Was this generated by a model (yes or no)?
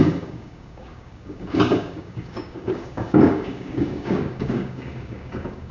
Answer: yes